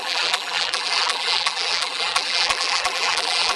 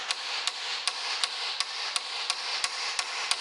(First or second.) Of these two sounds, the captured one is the second